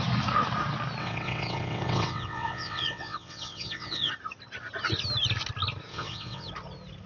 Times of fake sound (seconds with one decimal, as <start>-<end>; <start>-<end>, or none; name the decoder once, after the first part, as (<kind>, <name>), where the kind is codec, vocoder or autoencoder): 1.0-4.1 (vocoder, WaveNeXt); 5.9-6.5